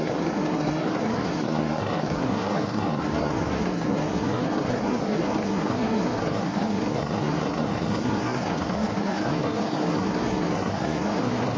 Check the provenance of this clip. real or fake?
fake